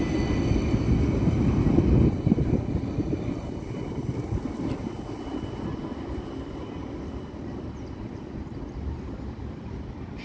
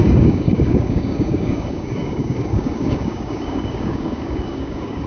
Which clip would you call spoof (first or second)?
second